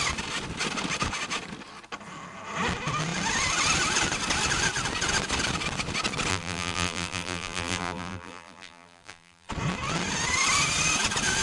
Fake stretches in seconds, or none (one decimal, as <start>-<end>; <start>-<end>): 6.3-9.5

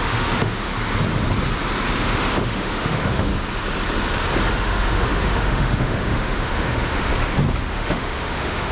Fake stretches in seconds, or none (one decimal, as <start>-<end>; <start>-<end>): 0.0-0.7; 2.0-3.3; 4.5-7.1; 7.7-8.7

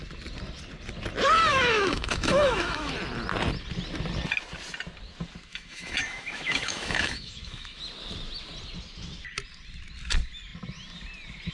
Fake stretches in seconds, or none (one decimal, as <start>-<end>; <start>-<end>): 1.5-2.9; 5.5-7.8

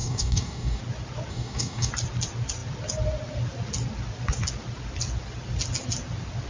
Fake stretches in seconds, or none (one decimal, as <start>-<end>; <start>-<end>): 0.0-0.8; 1.3-1.9

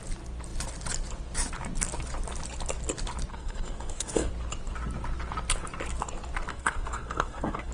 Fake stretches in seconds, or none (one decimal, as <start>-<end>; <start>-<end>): 3.3-4.3; 6.5-7.7